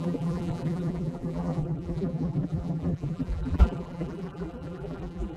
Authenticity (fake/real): fake